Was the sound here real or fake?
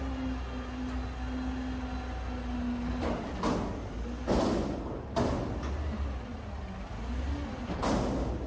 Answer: real